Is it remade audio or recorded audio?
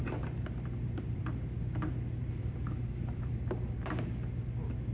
remade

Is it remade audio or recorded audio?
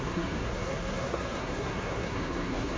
remade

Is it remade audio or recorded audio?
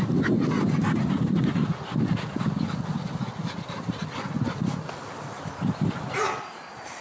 recorded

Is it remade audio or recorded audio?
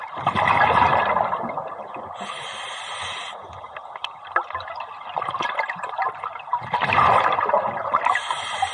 recorded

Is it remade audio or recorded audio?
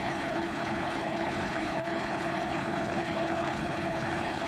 remade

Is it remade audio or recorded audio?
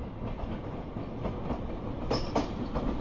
recorded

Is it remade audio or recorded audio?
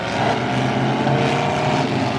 recorded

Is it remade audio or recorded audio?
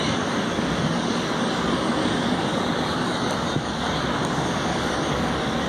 remade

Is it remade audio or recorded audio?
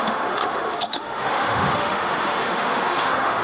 remade